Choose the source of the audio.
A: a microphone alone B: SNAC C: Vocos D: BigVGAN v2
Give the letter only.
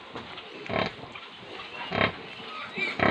A